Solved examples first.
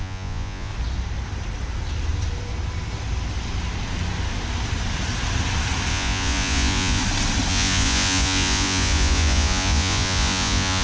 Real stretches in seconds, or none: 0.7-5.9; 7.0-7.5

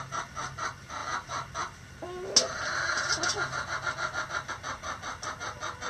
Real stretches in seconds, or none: 0.0-5.9